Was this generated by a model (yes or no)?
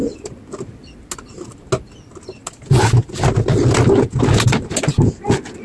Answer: no